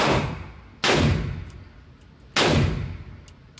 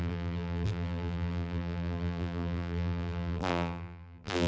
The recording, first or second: first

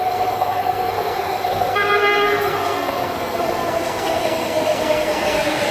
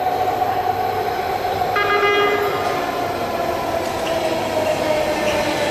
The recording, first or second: second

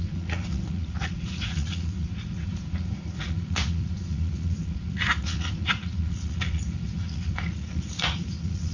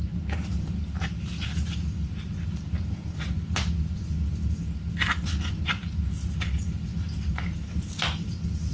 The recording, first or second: second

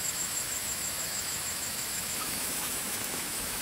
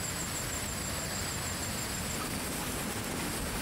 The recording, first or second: second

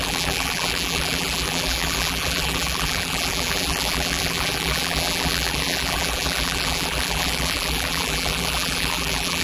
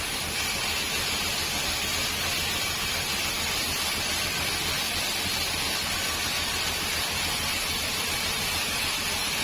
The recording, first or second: second